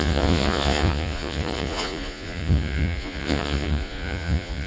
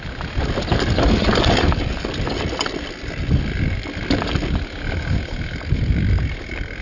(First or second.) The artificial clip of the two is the first